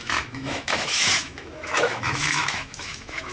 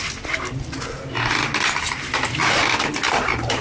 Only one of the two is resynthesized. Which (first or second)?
first